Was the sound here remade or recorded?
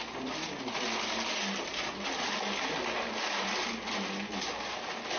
recorded